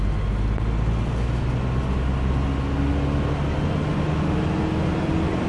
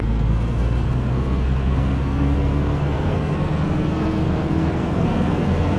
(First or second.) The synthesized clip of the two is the second